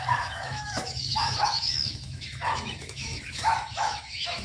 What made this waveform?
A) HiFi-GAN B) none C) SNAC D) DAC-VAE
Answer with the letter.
D